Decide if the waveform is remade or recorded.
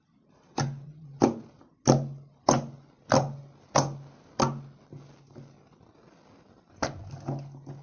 recorded